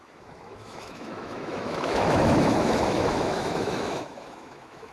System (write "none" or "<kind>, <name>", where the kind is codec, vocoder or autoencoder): autoencoder, DAC-VAE